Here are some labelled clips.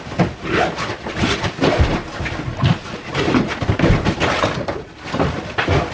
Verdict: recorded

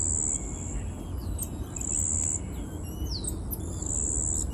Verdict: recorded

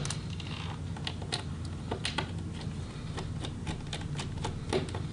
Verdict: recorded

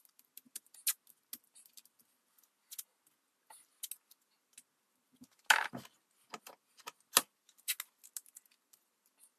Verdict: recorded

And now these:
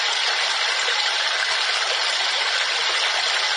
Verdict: remade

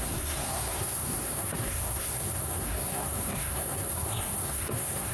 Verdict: remade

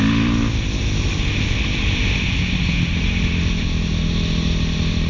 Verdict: recorded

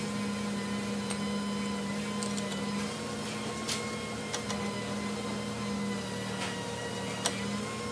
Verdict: recorded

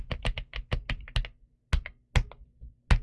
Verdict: recorded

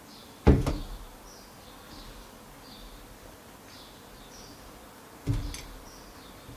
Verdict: recorded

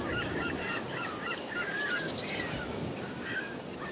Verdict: remade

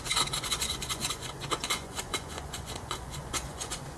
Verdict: remade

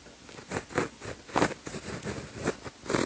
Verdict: recorded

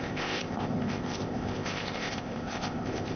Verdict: remade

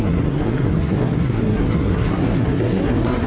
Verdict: remade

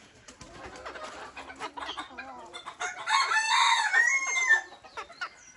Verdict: recorded